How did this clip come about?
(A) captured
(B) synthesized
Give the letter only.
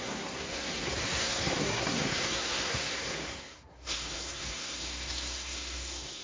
B